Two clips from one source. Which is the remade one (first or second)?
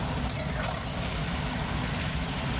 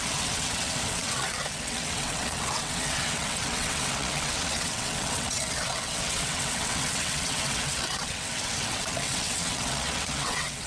second